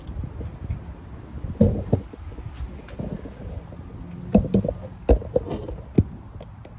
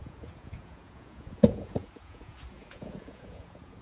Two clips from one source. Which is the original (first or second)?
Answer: first